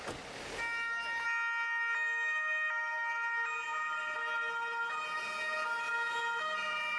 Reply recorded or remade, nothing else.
recorded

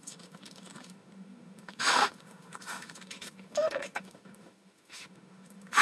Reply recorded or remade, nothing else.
remade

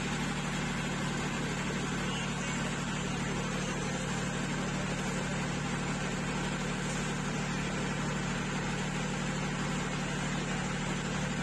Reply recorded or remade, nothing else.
recorded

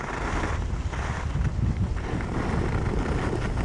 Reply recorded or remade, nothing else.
recorded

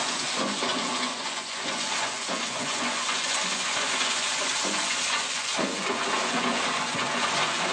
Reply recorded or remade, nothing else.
remade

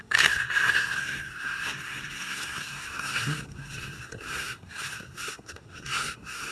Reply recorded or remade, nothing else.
remade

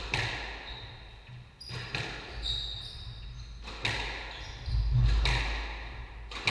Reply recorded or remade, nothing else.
recorded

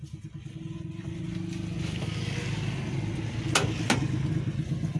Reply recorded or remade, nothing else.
recorded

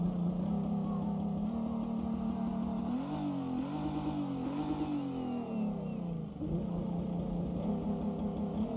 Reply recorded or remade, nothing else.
recorded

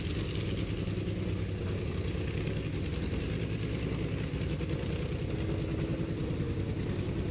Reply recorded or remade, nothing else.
recorded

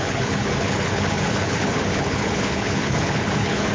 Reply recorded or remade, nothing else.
remade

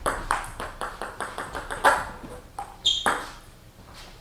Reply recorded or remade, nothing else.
remade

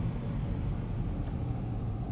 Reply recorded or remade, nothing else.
recorded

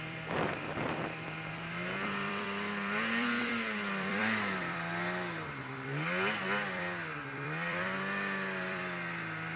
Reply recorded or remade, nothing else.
remade